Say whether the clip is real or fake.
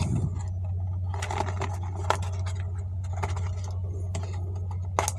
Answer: real